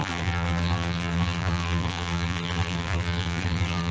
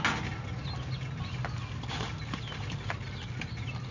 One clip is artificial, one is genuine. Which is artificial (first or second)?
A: first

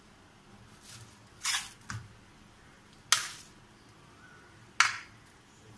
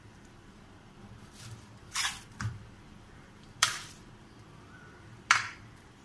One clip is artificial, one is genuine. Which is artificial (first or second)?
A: second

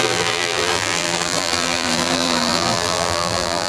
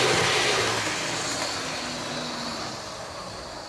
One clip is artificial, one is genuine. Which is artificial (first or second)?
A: first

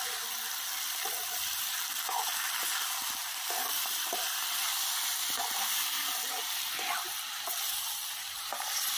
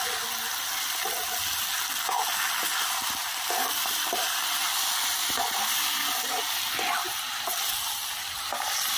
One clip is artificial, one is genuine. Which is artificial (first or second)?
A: first